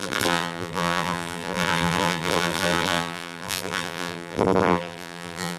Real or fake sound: fake